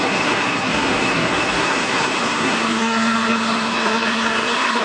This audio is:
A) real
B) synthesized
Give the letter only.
B